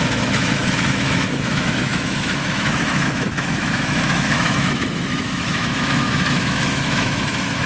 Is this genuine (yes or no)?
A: no